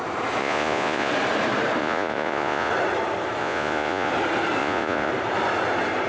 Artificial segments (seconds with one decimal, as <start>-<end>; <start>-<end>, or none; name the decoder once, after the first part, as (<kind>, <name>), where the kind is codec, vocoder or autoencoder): 0.4-1.1 (vocoder, Vocos); 1.8-2.7; 3.4-4.1; 4.6-5.1